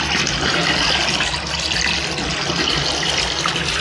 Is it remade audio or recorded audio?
recorded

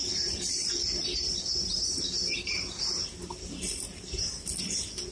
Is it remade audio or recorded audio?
remade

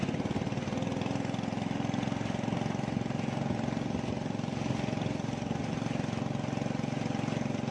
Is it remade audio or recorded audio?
recorded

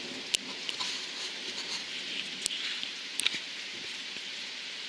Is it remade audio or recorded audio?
recorded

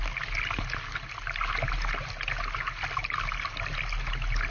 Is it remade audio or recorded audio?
recorded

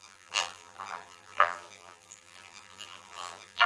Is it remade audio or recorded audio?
remade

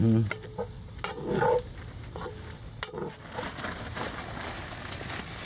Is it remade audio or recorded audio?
recorded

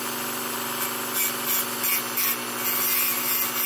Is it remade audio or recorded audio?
recorded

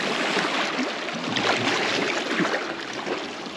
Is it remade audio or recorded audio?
recorded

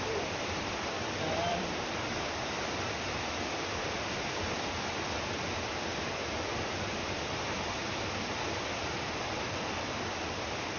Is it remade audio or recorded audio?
remade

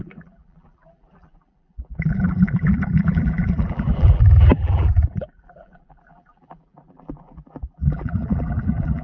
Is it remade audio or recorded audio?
remade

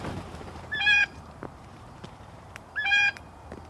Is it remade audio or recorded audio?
remade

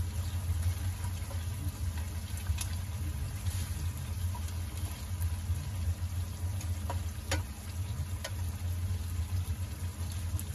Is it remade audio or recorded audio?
recorded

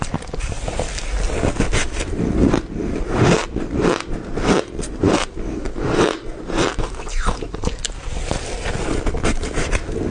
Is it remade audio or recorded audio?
recorded